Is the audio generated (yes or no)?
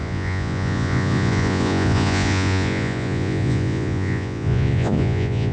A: yes